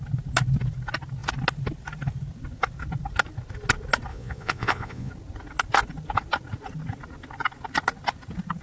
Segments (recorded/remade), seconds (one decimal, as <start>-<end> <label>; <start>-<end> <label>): 0.0-4.1 recorded; 4.1-5.1 remade; 5.1-8.6 recorded